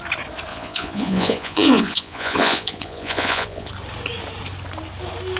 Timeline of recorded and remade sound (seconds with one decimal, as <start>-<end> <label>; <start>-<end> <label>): 0.0-0.5 recorded; 0.5-3.7 remade; 3.7-5.4 recorded